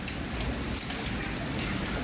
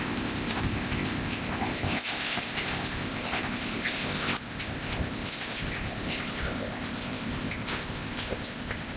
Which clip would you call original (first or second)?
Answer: first